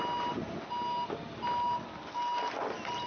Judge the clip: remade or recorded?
recorded